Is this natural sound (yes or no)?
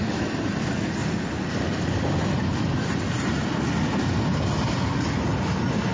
yes